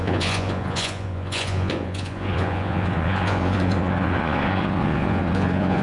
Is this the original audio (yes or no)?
no